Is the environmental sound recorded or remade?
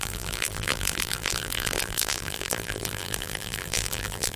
remade